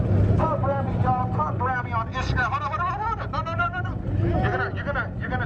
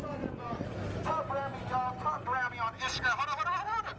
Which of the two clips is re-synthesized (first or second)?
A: first